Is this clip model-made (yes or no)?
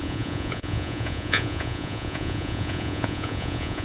yes